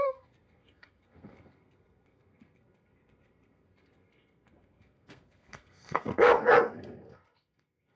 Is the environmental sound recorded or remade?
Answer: remade